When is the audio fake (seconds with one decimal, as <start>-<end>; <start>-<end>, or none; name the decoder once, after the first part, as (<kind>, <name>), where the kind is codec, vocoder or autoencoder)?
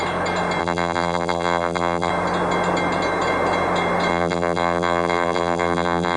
0.6-2.1 (vocoder, BigVGAN v2); 4.1-6.2